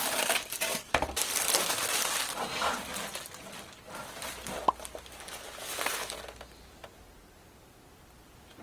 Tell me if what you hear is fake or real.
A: real